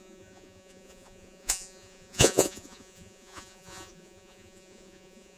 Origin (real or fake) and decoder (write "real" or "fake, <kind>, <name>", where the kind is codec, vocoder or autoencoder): fake, vocoder, Vocos